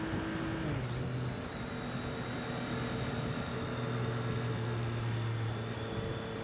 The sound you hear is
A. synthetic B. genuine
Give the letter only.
B